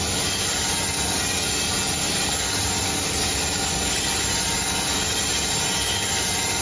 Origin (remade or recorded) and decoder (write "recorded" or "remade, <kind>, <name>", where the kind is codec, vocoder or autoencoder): recorded